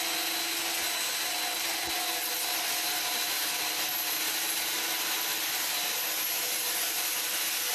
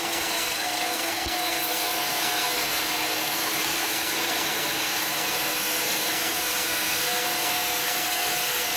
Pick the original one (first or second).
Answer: first